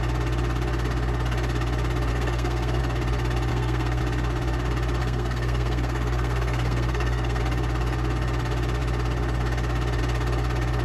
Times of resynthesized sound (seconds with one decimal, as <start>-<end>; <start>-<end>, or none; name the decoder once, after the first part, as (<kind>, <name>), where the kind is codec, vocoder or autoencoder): 2.1-2.8 (codec, SNAC); 3.5-4.0; 5.0-7.4